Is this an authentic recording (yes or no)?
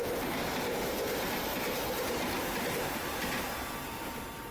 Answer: yes